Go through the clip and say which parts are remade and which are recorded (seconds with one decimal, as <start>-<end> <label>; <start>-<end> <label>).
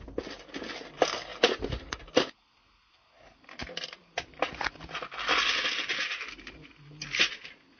0.0-7.8 recorded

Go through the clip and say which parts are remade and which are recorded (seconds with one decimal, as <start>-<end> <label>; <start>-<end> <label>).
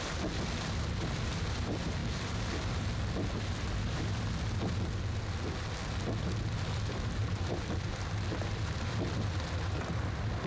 0.0-2.0 remade; 2.0-6.9 recorded; 6.9-10.5 remade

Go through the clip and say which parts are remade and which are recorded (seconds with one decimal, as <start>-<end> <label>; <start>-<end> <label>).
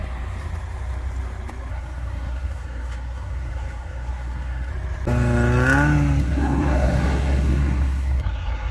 0.0-1.7 recorded; 1.7-4.7 remade; 4.7-6.2 recorded; 6.2-8.7 remade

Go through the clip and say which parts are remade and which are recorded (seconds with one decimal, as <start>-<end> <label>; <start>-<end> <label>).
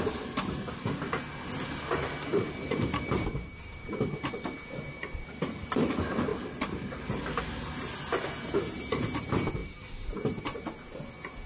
0.0-2.3 recorded; 2.3-4.0 remade; 4.0-6.3 recorded; 6.3-7.4 remade; 7.4-9.6 recorded; 9.6-10.4 remade; 10.4-11.5 recorded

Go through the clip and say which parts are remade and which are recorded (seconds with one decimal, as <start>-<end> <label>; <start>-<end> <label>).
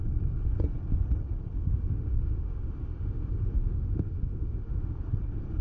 0.0-1.6 recorded; 1.6-5.0 remade; 5.0-5.6 recorded